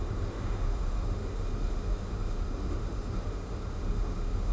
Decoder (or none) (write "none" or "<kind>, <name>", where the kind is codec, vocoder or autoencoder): autoencoder, DAC-VAE